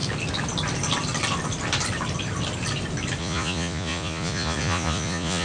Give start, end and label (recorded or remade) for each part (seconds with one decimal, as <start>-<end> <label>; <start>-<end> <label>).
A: 0.0-3.2 recorded; 3.2-5.4 remade